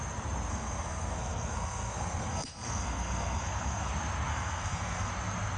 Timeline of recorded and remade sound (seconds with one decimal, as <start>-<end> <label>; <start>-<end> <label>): 0.0-0.5 recorded; 0.5-3.9 remade; 3.9-4.3 recorded; 4.3-5.1 remade; 5.1-5.6 recorded